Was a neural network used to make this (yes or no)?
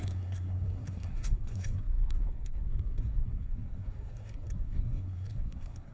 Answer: yes